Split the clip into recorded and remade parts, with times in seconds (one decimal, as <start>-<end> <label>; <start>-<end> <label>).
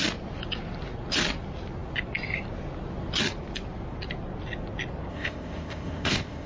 0.0-5.1 recorded; 5.1-6.5 remade